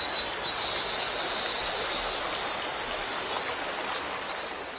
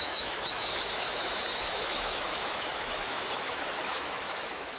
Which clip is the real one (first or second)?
first